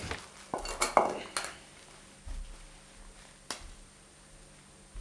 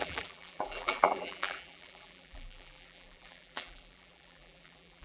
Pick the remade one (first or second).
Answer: second